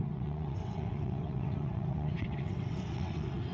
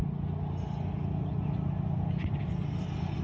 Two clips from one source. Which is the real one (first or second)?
second